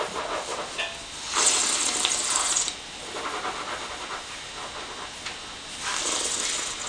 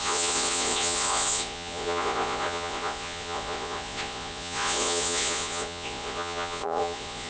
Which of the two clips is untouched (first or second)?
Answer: first